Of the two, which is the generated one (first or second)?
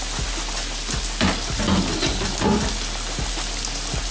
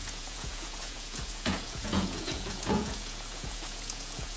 second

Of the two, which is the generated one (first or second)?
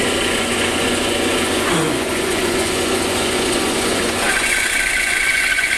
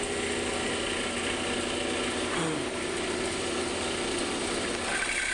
first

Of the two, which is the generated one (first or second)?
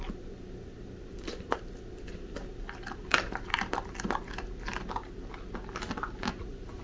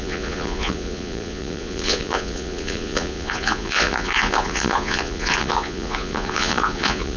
second